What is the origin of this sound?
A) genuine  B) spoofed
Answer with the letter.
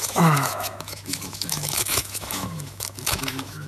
B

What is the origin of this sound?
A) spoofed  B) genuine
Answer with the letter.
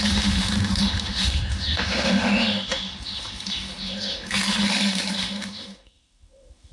A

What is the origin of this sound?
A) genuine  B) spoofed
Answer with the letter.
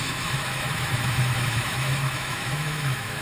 B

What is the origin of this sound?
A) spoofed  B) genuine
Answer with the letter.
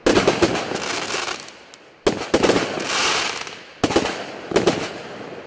B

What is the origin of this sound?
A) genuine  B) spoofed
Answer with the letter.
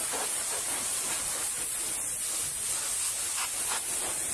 A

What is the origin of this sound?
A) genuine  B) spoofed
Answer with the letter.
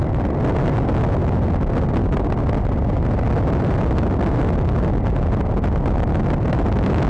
A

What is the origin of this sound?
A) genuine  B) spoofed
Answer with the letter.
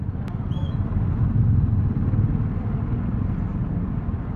A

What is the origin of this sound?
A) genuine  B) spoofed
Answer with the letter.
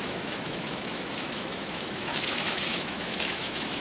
B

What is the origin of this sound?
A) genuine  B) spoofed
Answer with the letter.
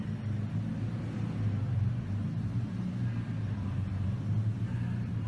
A